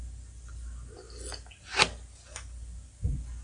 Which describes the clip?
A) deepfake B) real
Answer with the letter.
B